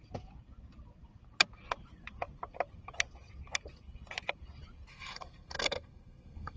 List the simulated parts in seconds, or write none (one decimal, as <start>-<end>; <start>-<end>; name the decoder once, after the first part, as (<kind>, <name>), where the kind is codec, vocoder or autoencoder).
4.9-6.6 (codec, SNAC)